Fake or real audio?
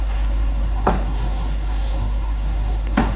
fake